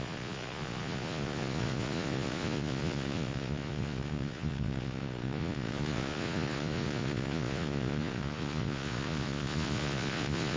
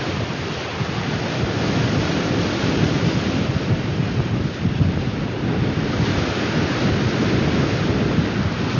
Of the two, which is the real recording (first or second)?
second